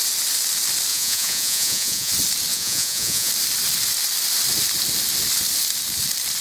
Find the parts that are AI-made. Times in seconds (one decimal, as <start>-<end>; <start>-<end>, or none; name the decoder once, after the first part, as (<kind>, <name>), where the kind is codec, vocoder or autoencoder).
0.9-2.1 (vocoder, Vocos); 2.5-3.3

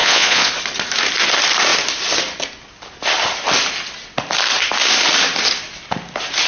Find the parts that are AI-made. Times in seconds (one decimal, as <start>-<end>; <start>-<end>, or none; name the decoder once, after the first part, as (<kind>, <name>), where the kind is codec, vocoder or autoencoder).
0.0-0.5 (vocoder, Vocos)